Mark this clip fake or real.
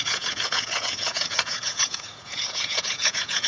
fake